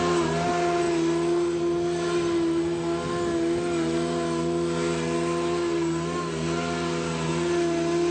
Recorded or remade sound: recorded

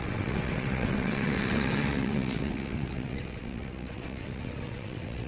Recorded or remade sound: remade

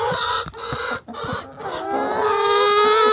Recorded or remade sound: recorded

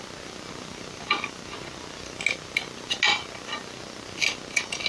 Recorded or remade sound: recorded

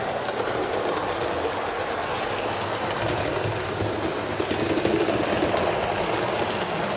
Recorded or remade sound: recorded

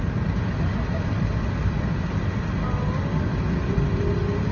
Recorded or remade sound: recorded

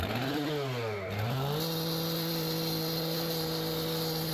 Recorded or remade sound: recorded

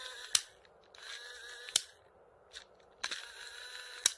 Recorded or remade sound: recorded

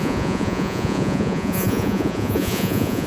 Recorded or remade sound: remade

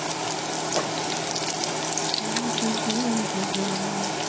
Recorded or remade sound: recorded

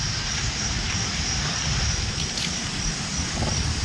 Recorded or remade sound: recorded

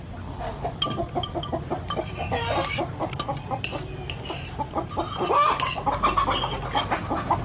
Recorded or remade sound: recorded